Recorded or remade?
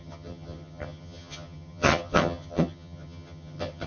remade